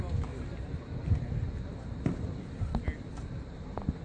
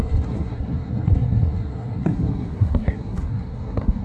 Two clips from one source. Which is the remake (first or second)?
second